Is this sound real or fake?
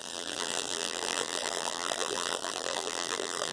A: fake